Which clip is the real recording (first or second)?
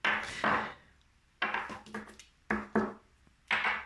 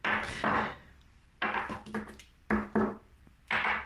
first